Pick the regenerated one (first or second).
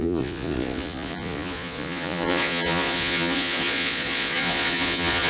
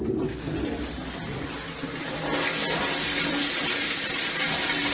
first